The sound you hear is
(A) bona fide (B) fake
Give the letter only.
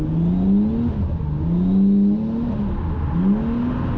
A